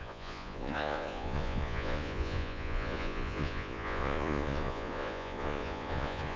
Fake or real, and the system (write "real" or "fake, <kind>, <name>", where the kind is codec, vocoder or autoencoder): fake, vocoder, Vocos